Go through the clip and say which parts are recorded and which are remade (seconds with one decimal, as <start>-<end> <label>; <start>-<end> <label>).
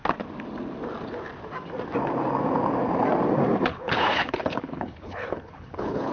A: 0.0-3.7 recorded; 3.7-6.1 remade